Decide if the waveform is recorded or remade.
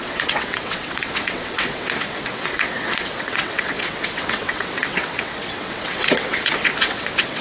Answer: remade